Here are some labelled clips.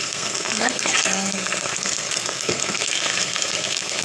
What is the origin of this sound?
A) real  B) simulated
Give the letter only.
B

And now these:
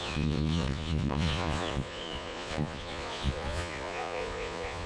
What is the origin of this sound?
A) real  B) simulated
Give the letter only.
B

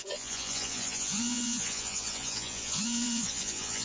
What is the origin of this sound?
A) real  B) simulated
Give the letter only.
B